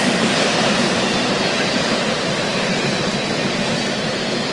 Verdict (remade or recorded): remade